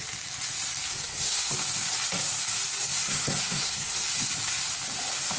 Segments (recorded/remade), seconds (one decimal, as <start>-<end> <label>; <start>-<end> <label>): 0.0-1.0 recorded; 1.0-1.5 remade; 1.5-2.8 recorded; 2.8-4.1 remade; 4.1-5.4 recorded